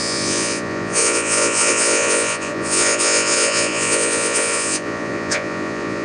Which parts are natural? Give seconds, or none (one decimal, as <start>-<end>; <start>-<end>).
none